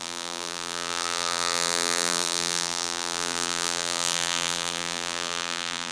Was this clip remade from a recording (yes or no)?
yes